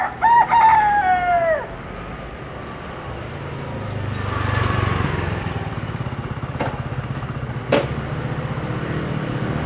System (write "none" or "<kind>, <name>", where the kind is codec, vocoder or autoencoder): none